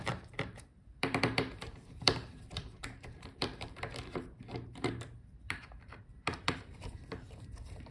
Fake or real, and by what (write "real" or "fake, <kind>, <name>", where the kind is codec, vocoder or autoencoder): fake, vocoder, BigVGAN v2